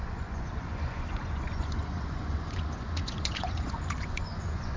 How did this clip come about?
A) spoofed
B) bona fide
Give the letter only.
A